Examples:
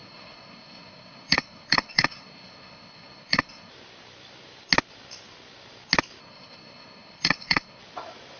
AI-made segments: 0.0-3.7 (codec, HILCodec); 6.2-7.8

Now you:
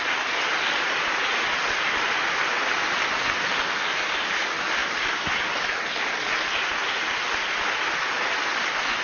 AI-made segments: none

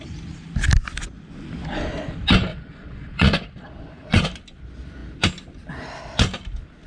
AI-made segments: 2.5-4.3 (vocoder, Vocos)

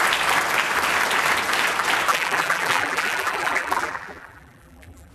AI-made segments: 2.1-5.1 (vocoder, BigVGAN v2)

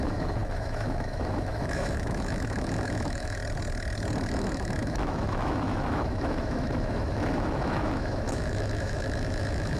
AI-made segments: 0.0-3.4 (autoencoder, DAC-VAE); 4.3-9.8

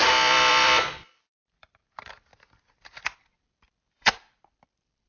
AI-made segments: 0.0-2.3 (vocoder, BigVGAN v2); 3.2-5.1

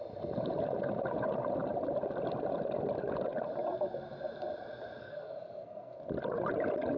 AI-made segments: 5.0-6.0 (codec, SNAC)

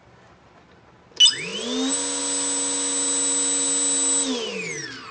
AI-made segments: none